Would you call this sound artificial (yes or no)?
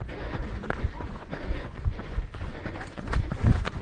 yes